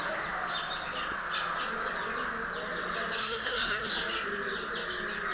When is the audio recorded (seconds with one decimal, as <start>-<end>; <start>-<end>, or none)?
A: 0.0-3.2; 3.9-5.3